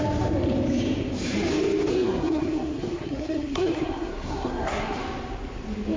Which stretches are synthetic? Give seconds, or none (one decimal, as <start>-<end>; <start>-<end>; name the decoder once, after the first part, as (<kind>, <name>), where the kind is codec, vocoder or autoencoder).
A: 1.9-5.0 (codec, SNAC)